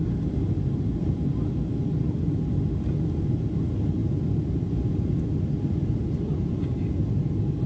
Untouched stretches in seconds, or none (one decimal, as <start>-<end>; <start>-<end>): 0.0-7.7